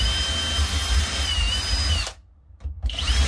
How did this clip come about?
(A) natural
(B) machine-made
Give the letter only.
A